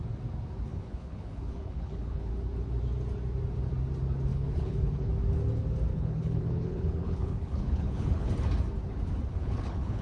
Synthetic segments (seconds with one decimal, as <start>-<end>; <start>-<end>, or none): 0.7-2.3; 4.3-5.1; 5.9-8.3; 9.3-10.0